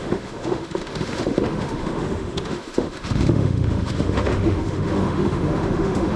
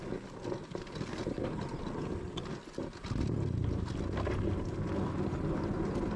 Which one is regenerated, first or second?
first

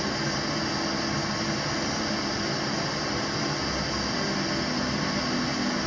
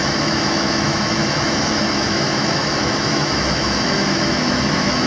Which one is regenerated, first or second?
second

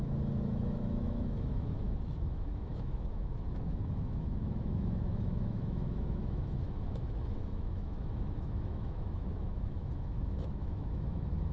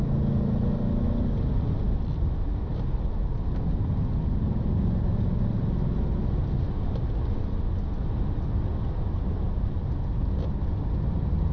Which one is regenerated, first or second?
first